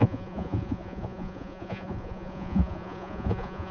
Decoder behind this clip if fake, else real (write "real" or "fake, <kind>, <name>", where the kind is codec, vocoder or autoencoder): fake, vocoder, Vocos